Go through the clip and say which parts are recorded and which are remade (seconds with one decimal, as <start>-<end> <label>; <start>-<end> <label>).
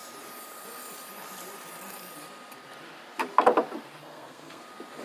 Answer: 0.0-4.0 recorded; 4.0-4.6 remade; 4.6-5.0 recorded